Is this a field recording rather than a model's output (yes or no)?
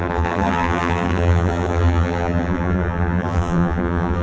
no